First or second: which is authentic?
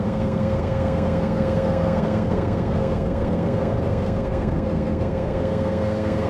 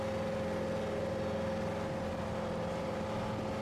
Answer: second